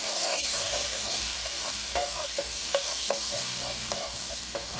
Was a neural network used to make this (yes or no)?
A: yes